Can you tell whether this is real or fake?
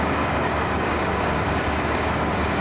fake